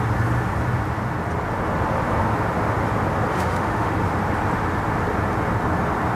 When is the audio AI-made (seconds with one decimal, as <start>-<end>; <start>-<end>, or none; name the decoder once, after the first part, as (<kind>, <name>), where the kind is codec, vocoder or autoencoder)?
3.3-3.9 (autoencoder, DAC-VAE)